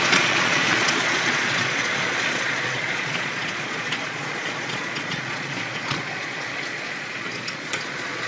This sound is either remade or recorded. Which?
remade